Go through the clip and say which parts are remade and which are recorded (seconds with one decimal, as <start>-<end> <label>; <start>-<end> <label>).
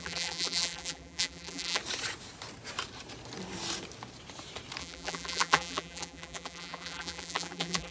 0.0-1.8 remade; 1.8-4.8 recorded; 4.8-7.9 remade